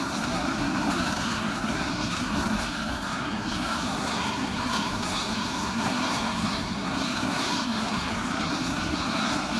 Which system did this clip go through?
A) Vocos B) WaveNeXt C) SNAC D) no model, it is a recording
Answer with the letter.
C